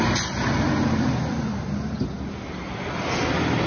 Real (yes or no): yes